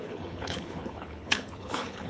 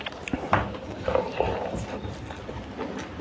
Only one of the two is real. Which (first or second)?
second